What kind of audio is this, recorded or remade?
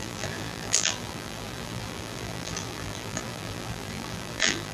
remade